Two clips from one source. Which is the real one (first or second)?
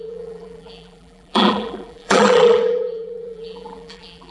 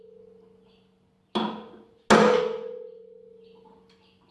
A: second